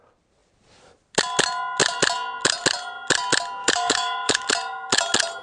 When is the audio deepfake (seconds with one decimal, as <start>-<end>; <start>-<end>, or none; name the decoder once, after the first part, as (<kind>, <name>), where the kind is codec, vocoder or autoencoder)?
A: 3.6-4.5 (autoencoder, DAC-VAE)